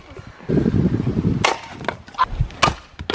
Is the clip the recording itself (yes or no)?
yes